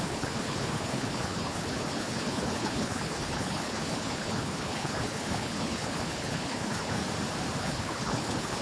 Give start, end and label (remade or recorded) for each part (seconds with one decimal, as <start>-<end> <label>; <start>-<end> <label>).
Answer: 0.0-7.0 remade; 7.0-7.6 recorded; 7.6-8.6 remade